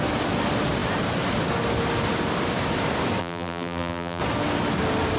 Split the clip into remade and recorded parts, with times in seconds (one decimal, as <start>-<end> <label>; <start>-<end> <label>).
0.0-3.2 recorded; 3.2-4.2 remade; 4.2-5.2 recorded